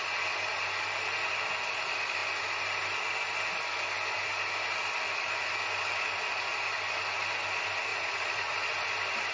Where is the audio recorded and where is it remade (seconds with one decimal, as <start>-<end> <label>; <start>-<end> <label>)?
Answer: 0.0-7.9 recorded; 7.9-8.9 remade; 8.9-9.3 recorded